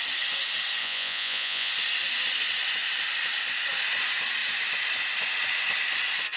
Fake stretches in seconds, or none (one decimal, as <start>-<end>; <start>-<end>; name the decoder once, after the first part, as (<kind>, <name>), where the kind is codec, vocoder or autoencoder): 0.8-1.7 (vocoder, Vocos)